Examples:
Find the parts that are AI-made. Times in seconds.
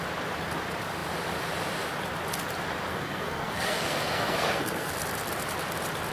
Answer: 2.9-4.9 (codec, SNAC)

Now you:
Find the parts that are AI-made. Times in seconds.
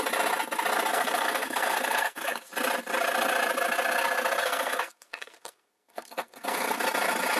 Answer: 0.9-2.5 (codec, SNAC); 4.4-6.8